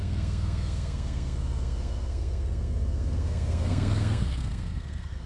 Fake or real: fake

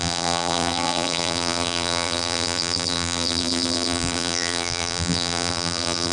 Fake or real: fake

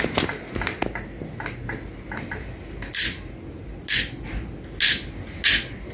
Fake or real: real